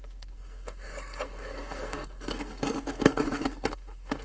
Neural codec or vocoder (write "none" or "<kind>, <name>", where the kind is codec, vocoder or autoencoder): codec, SNAC